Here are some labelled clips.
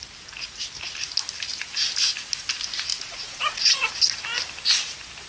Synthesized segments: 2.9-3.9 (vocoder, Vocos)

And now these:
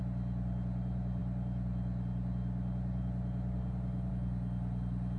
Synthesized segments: none

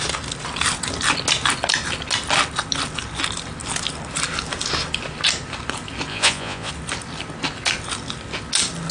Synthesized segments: 6.1-6.7 (vocoder, Vocos)

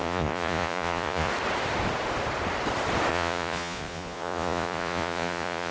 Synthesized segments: 0.0-1.3 (vocoder, Vocos); 3.1-5.7

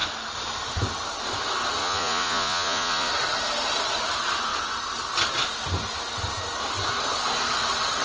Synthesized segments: 1.8-3.1 (vocoder, Vocos)

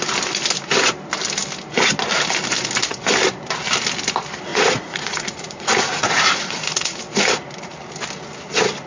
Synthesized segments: 4.5-7.0 (vocoder, Vocos)

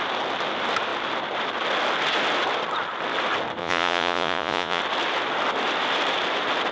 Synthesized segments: 3.6-4.8 (vocoder, Vocos)

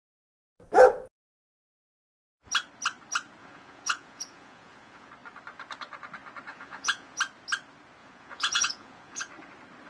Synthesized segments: 3.4-5.1 (vocoder, Vocos); 6.5-7.2; 8.0-9.3